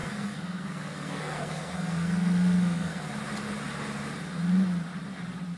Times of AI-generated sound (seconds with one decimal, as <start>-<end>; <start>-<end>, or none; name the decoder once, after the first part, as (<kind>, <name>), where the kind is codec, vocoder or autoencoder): 0.0-3.0 (codec, SNAC)